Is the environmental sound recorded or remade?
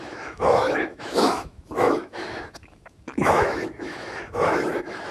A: remade